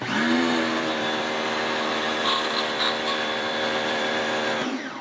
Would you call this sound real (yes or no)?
no